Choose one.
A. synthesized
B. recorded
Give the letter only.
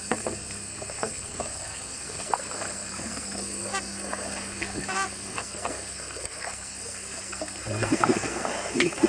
A